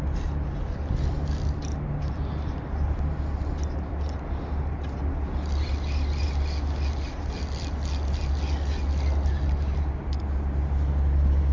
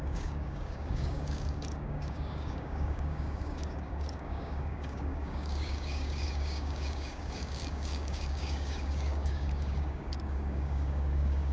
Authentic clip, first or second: first